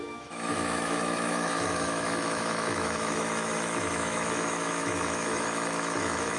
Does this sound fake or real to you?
fake